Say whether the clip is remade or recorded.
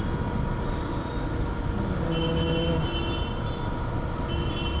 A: recorded